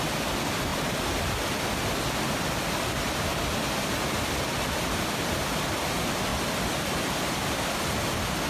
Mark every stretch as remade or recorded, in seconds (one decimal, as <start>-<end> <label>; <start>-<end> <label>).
0.0-8.5 recorded